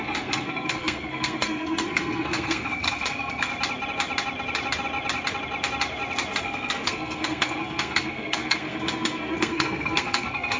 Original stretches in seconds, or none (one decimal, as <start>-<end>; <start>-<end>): 3.5-6.4